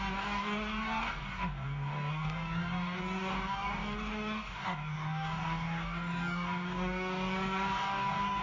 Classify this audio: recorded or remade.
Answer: remade